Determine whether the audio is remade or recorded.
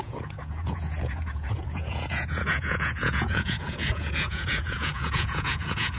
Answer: remade